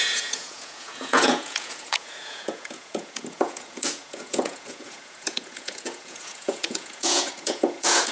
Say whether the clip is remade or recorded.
remade